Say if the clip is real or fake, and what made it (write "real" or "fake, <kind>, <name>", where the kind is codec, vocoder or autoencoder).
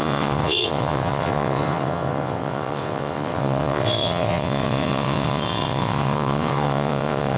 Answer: fake, vocoder, WaveNeXt